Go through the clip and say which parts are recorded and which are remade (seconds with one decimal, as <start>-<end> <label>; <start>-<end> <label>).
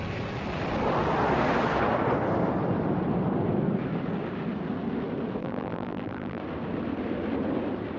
0.0-5.4 recorded; 5.4-6.4 remade; 6.4-8.0 recorded